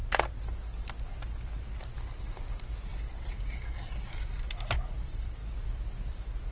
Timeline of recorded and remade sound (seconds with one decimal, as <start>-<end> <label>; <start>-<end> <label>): 0.0-2.2 recorded; 2.2-5.4 remade; 5.4-6.1 recorded; 6.1-6.5 remade